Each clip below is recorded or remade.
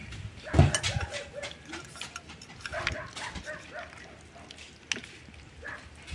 recorded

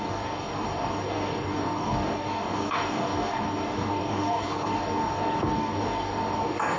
remade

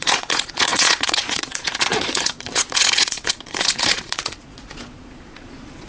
remade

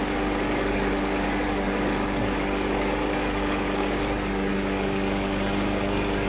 remade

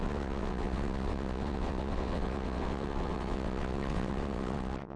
remade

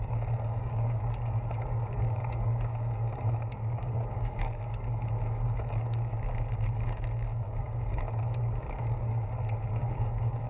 remade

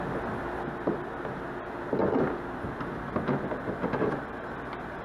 recorded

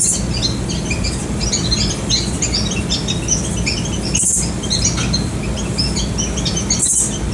recorded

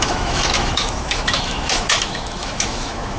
remade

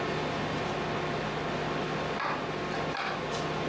recorded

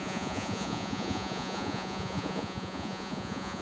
remade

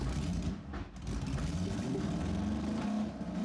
recorded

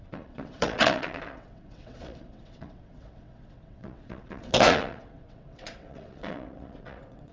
remade